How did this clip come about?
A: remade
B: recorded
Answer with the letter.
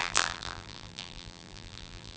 A